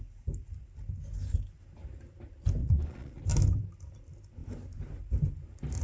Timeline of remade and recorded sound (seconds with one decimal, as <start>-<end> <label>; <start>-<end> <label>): 0.0-2.6 recorded; 2.6-3.2 remade; 3.2-5.8 recorded